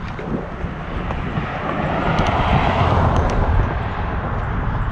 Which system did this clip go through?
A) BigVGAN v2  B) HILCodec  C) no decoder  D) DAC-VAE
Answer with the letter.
C